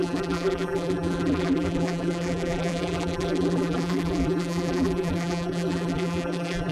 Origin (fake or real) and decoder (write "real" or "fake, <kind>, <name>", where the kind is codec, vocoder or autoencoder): fake, vocoder, BigVGAN v2